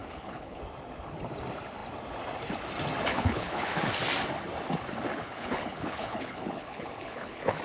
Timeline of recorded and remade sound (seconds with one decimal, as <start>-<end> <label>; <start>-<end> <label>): 0.0-0.6 remade; 0.6-3.1 recorded; 3.1-3.9 remade; 3.9-5.1 recorded; 5.1-7.6 remade

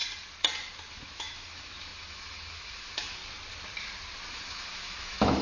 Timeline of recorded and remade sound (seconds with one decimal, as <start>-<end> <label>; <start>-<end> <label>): 0.0-0.9 recorded; 0.9-3.2 remade; 3.2-4.3 recorded; 4.3-5.4 remade

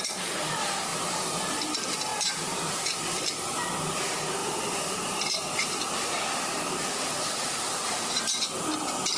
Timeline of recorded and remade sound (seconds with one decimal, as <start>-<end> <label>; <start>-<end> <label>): 0.0-0.9 recorded; 0.9-1.5 remade; 1.5-4.4 recorded; 4.4-8.2 remade; 8.2-9.2 recorded

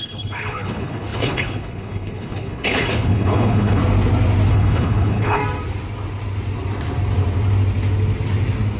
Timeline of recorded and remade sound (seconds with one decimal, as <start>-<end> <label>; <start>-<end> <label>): 0.0-3.8 remade; 3.8-4.5 recorded; 4.5-5.4 remade; 5.4-8.8 recorded

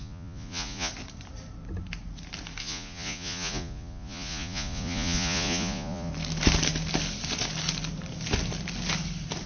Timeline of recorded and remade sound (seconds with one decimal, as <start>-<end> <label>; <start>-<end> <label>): 0.0-0.9 remade; 0.9-2.6 recorded; 2.6-6.1 remade; 6.1-9.5 recorded